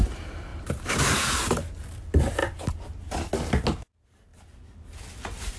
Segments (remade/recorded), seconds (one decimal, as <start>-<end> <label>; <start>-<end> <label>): 0.0-0.5 recorded; 0.5-1.9 remade; 1.9-5.6 recorded